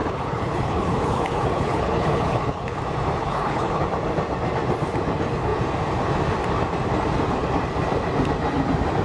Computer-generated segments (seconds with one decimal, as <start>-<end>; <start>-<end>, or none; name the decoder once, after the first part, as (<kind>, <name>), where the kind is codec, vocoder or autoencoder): 0.0-2.8 (codec, HILCodec); 3.2-3.8